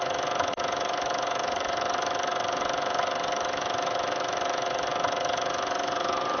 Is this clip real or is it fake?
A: fake